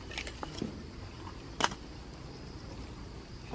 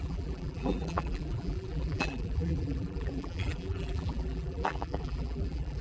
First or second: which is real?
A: first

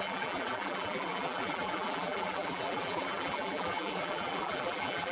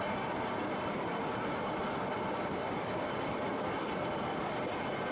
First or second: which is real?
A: second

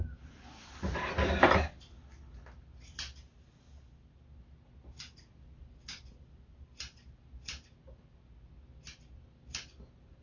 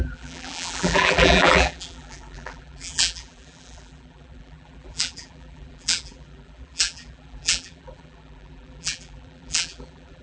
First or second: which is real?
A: first